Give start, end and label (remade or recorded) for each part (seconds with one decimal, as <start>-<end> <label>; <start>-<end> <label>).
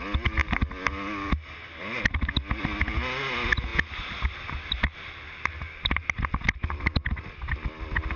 0.0-8.2 recorded